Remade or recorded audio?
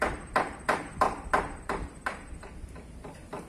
remade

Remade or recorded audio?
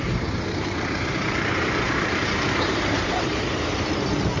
remade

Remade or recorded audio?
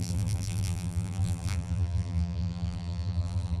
remade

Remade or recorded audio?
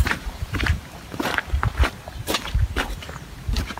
remade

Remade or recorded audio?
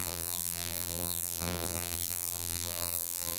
remade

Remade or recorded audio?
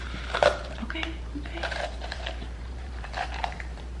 remade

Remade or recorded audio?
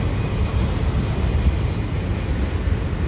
recorded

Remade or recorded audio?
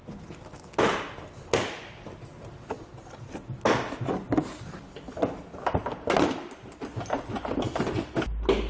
recorded